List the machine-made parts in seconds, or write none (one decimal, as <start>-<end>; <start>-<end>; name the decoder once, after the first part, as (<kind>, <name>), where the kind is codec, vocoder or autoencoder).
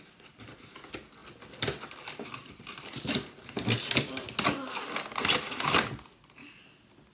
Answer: none